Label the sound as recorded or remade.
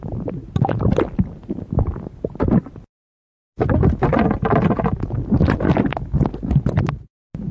recorded